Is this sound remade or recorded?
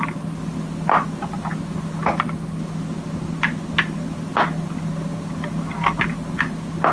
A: recorded